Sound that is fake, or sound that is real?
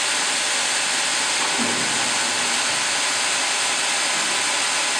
real